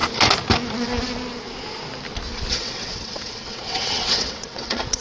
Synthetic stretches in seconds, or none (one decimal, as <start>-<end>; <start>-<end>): 2.5-5.0

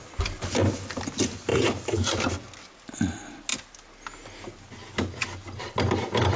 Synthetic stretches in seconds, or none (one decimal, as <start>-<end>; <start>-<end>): none

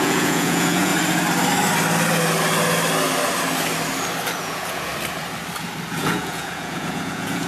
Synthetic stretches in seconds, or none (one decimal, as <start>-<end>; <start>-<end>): 0.0-0.9; 4.4-4.9; 5.9-7.5

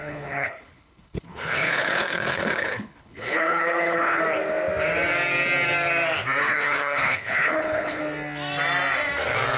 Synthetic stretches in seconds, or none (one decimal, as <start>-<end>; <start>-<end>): 0.0-4.2; 6.4-8.0

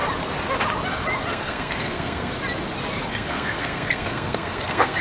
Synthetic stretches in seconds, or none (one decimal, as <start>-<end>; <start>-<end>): 1.3-2.3; 3.1-5.0

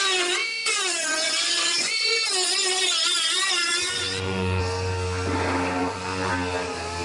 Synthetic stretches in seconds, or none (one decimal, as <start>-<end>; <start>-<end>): 0.4-4.6; 5.8-6.3

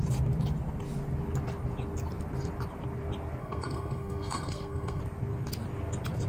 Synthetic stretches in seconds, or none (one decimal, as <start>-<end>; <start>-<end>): 3.4-5.0

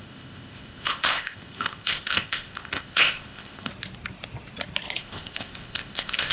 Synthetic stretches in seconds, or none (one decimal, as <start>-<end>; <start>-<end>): 0.0-3.7; 5.0-6.3